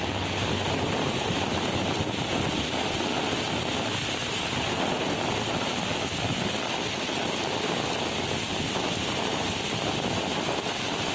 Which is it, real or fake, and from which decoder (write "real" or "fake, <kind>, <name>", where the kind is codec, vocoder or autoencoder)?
real